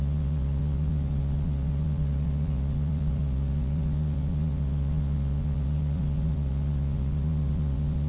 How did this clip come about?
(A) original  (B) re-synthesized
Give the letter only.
B